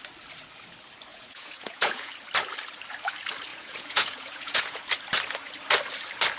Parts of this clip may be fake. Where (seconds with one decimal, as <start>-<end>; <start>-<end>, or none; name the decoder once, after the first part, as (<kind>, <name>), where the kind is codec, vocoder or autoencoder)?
1.1-2.1 (vocoder, Vocos); 3.5-4.8